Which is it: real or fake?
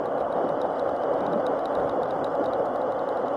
real